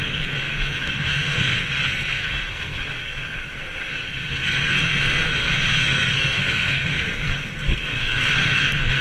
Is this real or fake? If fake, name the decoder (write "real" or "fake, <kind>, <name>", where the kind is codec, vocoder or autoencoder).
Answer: fake, codec, SNAC